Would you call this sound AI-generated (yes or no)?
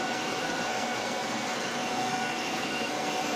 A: yes